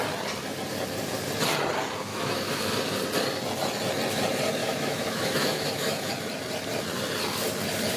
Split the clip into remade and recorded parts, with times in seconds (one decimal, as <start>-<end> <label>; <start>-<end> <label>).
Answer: 0.0-2.1 recorded; 2.1-2.6 remade; 2.6-4.6 recorded; 4.6-6.1 remade; 6.1-8.0 recorded